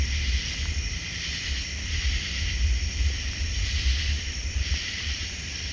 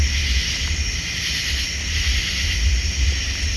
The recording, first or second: second